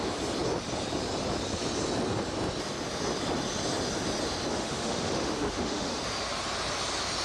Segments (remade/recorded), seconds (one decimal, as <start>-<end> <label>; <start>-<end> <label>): 0.0-4.5 recorded; 4.5-6.0 remade; 6.0-7.2 recorded